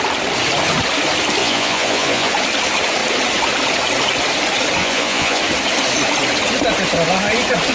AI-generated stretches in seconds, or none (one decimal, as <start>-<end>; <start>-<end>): 1.4-2.3; 4.8-5.4